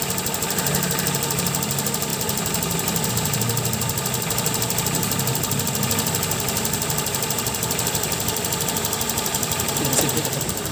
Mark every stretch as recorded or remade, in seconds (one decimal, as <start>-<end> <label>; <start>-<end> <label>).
0.0-10.7 recorded

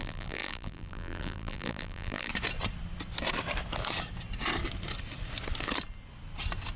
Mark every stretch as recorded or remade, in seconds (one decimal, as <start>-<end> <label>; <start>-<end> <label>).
0.0-2.3 remade; 2.3-6.8 recorded

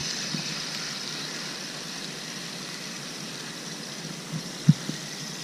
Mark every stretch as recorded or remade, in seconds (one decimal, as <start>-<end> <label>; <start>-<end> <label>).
0.0-5.4 recorded

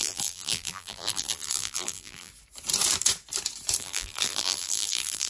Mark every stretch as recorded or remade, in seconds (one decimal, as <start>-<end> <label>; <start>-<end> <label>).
0.0-2.3 remade; 2.3-3.8 recorded; 3.8-5.3 remade

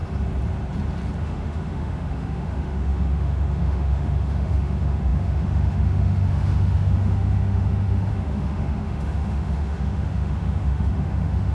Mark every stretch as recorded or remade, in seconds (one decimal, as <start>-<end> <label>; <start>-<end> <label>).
0.0-1.2 recorded; 1.2-11.5 remade

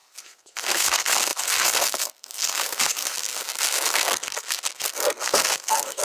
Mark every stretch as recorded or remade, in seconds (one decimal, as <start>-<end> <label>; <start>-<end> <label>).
0.0-6.0 remade

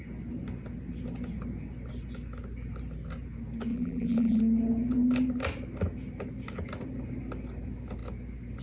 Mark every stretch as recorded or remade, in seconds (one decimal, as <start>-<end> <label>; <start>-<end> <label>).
0.0-3.7 recorded; 3.7-4.4 remade; 4.4-8.6 recorded